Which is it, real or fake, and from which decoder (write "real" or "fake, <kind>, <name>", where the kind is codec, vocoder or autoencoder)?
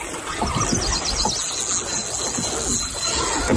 real